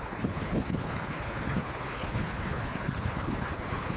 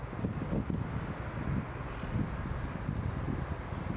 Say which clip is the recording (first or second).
second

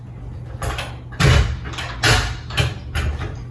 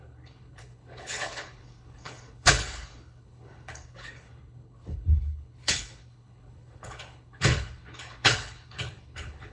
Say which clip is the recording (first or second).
first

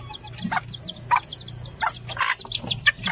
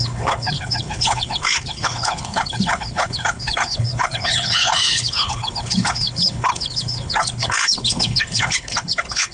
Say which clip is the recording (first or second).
first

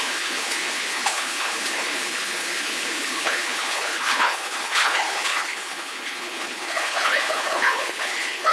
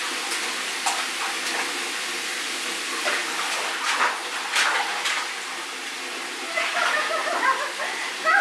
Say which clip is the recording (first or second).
second